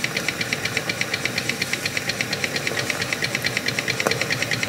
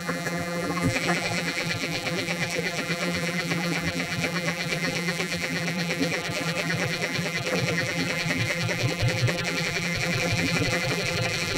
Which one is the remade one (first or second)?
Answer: second